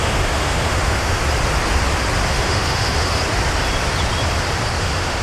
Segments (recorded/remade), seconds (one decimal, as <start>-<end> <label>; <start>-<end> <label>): 0.0-1.2 remade; 1.2-2.3 recorded; 2.3-3.2 remade; 3.2-4.8 recorded; 4.8-5.2 remade